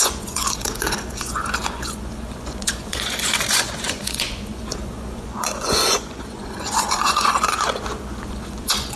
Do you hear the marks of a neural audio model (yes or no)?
yes